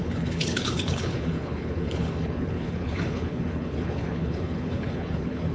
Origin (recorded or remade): remade